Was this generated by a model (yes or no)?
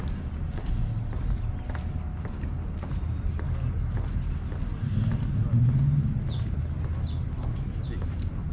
no